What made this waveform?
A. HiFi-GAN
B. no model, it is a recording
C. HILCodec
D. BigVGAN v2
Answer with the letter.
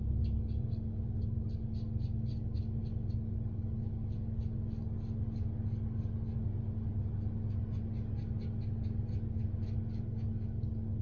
B